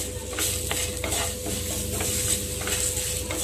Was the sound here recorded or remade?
recorded